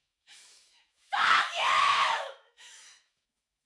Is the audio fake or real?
fake